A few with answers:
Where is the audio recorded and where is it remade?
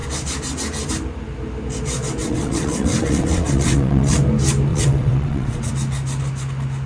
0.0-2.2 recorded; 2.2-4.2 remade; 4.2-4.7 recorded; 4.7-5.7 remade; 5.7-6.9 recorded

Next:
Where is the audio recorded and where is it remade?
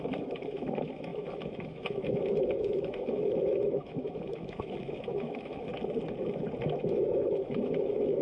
0.0-5.7 remade; 5.7-6.8 recorded; 6.8-8.2 remade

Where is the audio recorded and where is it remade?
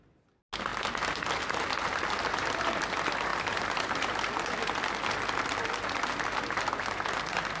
0.0-3.3 recorded; 3.3-4.2 remade; 4.2-7.6 recorded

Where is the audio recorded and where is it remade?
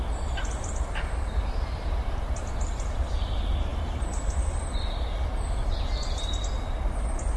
0.0-7.4 recorded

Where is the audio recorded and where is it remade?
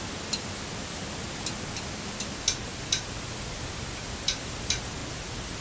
0.0-5.6 recorded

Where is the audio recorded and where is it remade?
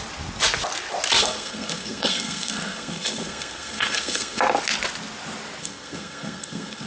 0.0-1.2 recorded; 1.2-4.4 remade; 4.4-5.6 recorded; 5.6-6.9 remade